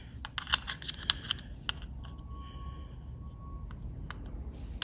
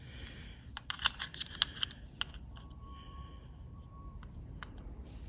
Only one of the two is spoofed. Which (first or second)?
second